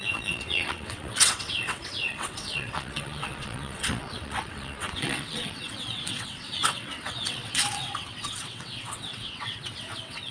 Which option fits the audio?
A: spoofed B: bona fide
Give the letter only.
A